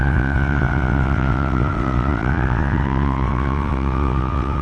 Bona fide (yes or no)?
no